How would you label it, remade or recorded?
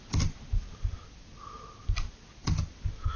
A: recorded